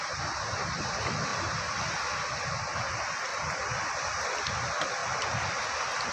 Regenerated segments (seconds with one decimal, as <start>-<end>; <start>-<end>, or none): 1.3-2.1